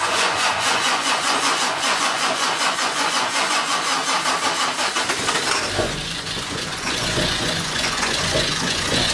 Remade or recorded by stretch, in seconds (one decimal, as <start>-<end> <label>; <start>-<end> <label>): 0.0-3.9 remade; 3.9-5.8 recorded; 5.8-9.1 remade